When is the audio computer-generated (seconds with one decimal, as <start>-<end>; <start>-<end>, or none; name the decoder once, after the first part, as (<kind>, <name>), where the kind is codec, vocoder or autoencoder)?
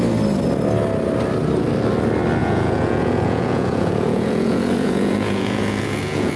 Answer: 2.4-6.4 (vocoder, Vocos)